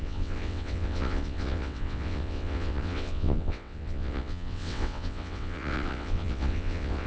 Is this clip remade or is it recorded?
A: remade